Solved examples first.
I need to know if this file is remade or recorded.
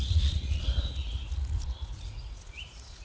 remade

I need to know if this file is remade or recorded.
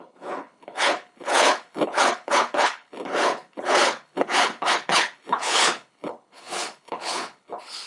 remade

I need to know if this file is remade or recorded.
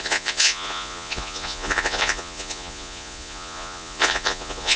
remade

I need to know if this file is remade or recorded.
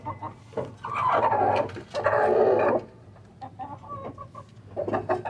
recorded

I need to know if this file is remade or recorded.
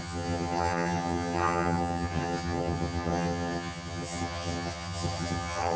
remade